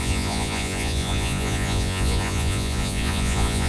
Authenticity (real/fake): fake